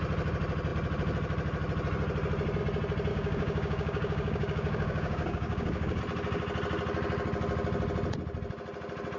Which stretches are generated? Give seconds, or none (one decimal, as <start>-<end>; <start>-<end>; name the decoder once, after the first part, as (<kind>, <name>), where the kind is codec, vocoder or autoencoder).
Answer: 3.1-6.0 (codec, DAC)

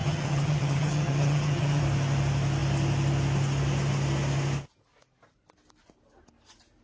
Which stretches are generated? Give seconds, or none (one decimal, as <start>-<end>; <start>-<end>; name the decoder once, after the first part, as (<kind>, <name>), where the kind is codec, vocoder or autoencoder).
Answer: 0.0-1.8 (vocoder, HiFi-GAN)